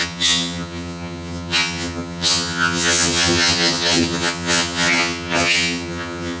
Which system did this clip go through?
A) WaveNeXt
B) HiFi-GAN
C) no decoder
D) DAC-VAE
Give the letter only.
B